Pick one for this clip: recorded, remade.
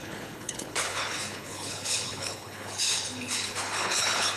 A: remade